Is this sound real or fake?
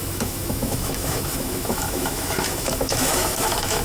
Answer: fake